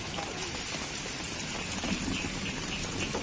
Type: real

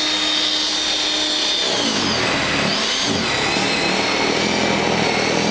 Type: real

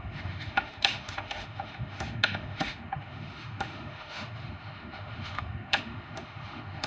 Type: fake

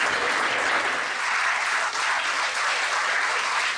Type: real